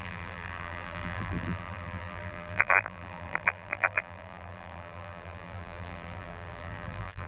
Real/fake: fake